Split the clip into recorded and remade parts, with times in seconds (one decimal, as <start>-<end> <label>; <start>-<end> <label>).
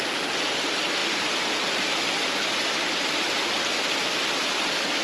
0.0-5.0 recorded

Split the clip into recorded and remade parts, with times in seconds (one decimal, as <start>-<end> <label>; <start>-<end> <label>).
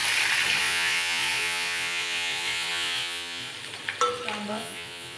0.0-0.6 recorded; 0.6-3.5 remade; 3.5-4.5 recorded; 4.5-5.2 remade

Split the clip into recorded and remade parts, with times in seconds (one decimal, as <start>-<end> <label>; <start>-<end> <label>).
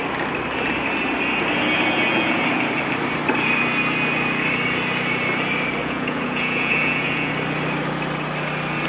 0.0-5.8 recorded; 5.8-7.3 remade; 7.3-8.9 recorded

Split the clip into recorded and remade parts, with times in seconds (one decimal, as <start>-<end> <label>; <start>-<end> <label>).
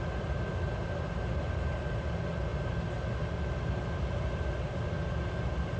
0.0-5.8 recorded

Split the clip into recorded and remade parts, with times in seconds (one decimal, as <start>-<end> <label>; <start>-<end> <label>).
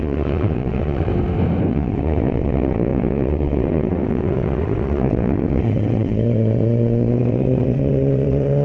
0.0-1.1 remade; 1.1-1.7 recorded; 1.7-8.6 remade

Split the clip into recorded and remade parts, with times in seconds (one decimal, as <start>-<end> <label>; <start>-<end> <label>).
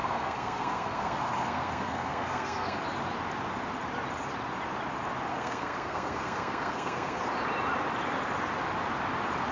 0.0-2.8 remade; 2.8-5.3 recorded; 5.3-7.2 remade; 7.2-9.5 recorded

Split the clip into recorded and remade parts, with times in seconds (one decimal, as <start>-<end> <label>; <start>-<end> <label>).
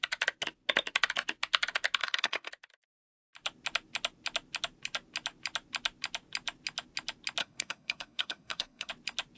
0.0-2.0 recorded; 2.0-2.5 remade; 2.5-7.4 recorded; 7.4-8.9 remade; 8.9-9.4 recorded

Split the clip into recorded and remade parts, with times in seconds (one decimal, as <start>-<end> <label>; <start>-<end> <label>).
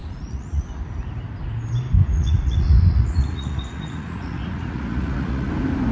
0.0-0.7 remade; 0.7-2.0 recorded; 2.0-5.5 remade; 5.5-5.9 recorded